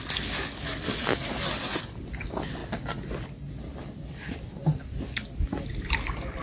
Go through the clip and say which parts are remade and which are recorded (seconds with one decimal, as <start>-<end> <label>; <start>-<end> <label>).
0.0-6.4 recorded